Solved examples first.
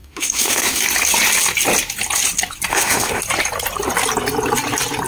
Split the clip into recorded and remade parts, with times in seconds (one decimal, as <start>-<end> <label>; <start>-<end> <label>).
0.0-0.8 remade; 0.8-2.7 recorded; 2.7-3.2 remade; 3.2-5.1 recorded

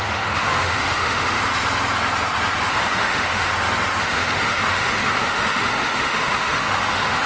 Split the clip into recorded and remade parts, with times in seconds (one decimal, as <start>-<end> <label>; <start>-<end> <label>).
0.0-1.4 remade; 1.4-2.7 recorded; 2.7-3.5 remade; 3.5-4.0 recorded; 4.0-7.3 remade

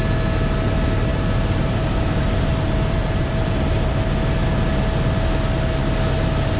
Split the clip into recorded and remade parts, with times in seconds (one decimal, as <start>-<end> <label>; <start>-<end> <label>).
0.0-1.1 recorded; 1.1-3.9 remade; 3.9-6.6 recorded

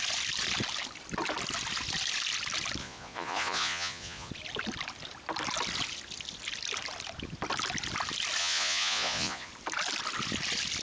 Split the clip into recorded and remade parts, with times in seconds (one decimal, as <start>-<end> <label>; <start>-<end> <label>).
0.0-2.8 recorded; 2.8-4.3 remade; 4.3-8.4 recorded; 8.4-9.5 remade; 9.5-10.8 recorded

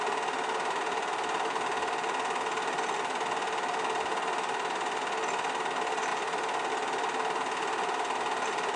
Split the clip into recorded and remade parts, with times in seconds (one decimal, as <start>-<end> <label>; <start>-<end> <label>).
0.0-8.8 recorded